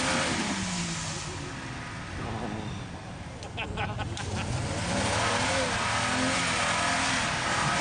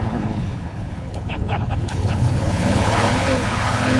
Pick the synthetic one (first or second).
second